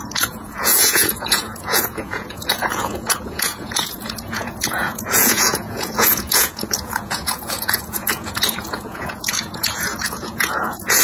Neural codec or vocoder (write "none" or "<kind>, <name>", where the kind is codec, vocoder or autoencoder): vocoder, Vocos